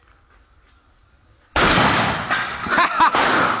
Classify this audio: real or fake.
real